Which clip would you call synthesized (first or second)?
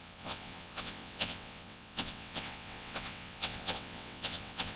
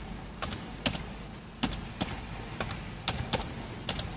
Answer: first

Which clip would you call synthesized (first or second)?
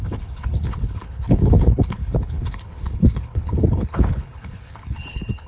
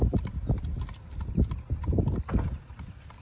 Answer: first